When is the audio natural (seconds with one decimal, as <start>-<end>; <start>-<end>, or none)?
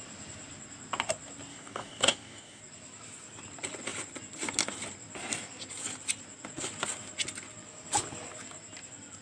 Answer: 0.0-1.5; 2.6-9.2